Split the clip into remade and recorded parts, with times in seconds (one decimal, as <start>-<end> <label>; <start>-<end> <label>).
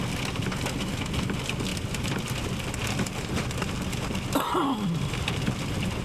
0.0-1.7 recorded; 1.7-3.3 remade; 3.3-4.6 recorded; 4.6-6.0 remade